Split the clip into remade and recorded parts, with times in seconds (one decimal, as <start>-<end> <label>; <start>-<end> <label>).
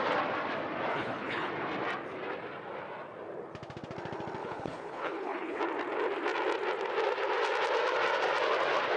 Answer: 0.0-0.9 recorded; 0.9-1.5 remade; 1.5-4.4 recorded; 4.4-5.6 remade; 5.6-9.0 recorded